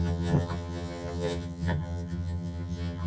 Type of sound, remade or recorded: remade